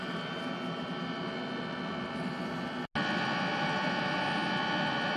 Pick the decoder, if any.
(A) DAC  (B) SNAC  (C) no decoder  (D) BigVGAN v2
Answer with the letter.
C